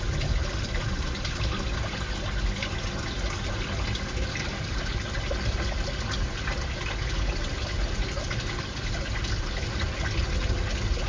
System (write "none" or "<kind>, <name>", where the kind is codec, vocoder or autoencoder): none